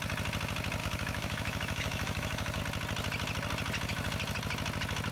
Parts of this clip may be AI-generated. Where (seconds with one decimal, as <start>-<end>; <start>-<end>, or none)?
0.8-2.6